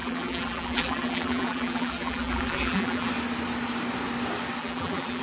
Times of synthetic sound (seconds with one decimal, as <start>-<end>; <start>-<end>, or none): 0.0-3.1; 4.6-5.2